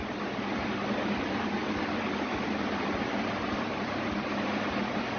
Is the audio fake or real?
real